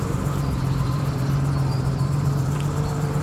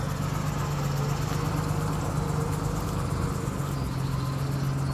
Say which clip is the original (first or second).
second